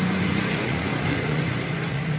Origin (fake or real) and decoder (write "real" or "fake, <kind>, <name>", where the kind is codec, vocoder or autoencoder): fake, vocoder, Vocos